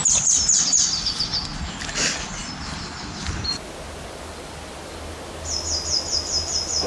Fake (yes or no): no